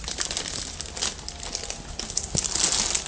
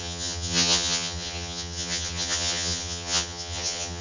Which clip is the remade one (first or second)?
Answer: second